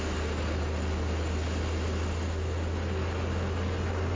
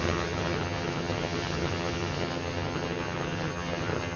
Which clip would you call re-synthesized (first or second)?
second